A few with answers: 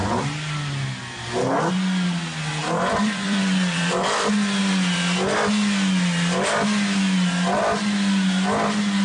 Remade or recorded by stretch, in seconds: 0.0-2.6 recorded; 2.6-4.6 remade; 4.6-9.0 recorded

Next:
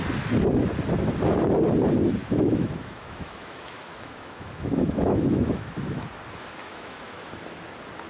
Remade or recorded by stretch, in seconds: 0.0-2.2 recorded; 2.2-6.1 remade; 6.1-6.6 recorded; 6.6-7.3 remade; 7.3-8.1 recorded

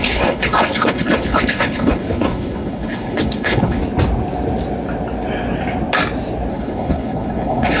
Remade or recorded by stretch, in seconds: 0.0-3.8 remade; 3.8-6.5 recorded; 6.5-7.8 remade